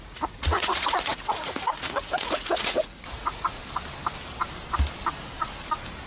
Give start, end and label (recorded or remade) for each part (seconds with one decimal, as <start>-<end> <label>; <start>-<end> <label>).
0.0-3.6 remade; 3.6-6.1 recorded